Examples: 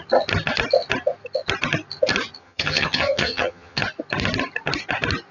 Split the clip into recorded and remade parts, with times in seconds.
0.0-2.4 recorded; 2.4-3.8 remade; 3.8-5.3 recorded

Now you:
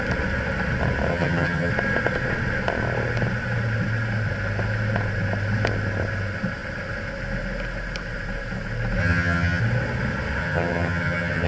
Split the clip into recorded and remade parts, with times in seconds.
0.0-1.1 recorded; 1.1-1.7 remade; 1.7-9.0 recorded; 9.0-9.6 remade; 9.6-10.4 recorded; 10.4-11.5 remade

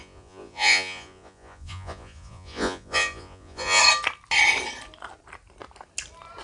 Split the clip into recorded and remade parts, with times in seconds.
0.0-3.8 remade; 3.8-6.4 recorded

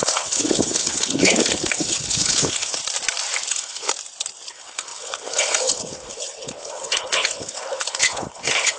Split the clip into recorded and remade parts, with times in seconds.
0.0-2.8 remade; 2.8-3.5 recorded; 3.5-3.9 remade; 3.9-4.5 recorded; 4.5-8.8 remade

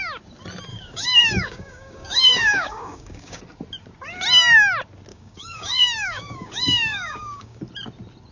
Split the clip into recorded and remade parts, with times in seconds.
0.0-0.7 recorded; 0.7-3.4 remade; 3.4-5.1 recorded; 5.1-7.6 remade; 7.6-8.3 recorded

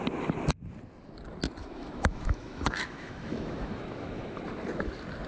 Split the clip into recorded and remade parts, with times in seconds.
0.0-1.6 recorded; 1.6-4.4 remade; 4.4-5.3 recorded